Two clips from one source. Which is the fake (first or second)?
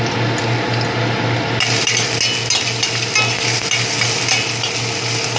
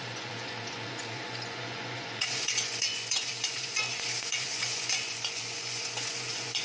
second